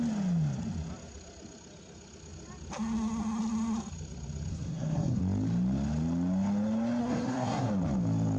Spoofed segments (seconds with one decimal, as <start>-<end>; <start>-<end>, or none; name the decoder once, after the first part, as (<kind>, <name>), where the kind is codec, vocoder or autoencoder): 4.5-5.2 (codec, SNAC); 7.0-7.7